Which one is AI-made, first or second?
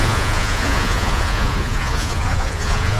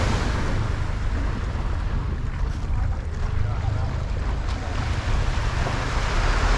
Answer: first